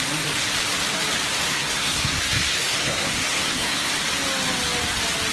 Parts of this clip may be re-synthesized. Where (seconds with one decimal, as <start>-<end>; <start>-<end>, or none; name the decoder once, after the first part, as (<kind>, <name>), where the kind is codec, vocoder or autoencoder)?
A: 1.4-3.9 (codec, SNAC)